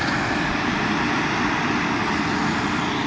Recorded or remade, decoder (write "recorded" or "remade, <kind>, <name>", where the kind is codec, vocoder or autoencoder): recorded